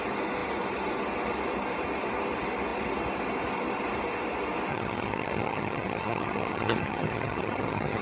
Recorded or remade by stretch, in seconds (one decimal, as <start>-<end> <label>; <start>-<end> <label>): 0.0-4.7 recorded; 4.7-8.0 remade